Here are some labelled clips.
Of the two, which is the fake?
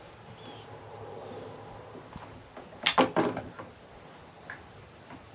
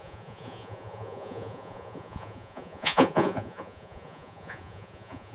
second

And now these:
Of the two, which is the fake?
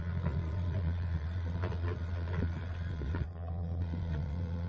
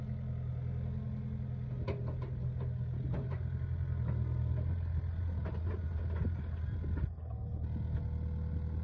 first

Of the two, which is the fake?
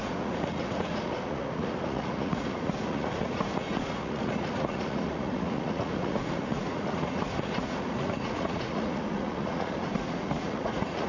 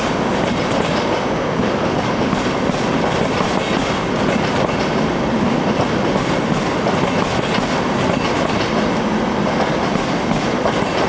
first